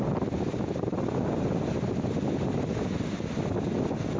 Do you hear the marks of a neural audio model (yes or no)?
no